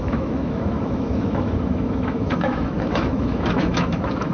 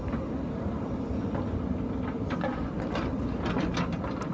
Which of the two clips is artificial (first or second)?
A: first